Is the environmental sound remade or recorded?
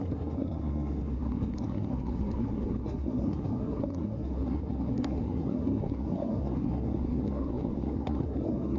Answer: remade